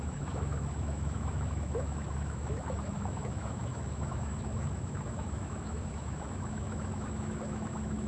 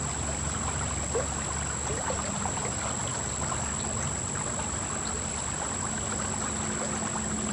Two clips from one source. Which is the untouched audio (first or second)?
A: second